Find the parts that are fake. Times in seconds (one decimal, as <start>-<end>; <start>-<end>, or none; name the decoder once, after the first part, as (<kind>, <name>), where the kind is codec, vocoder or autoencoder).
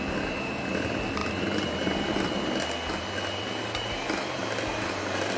0.0-5.4 (vocoder, BigVGAN v2)